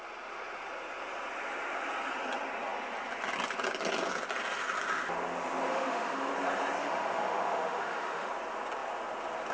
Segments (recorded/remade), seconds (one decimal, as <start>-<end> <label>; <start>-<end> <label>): 0.0-5.7 recorded; 5.7-6.3 remade; 6.3-6.8 recorded; 6.8-8.3 remade; 8.3-9.5 recorded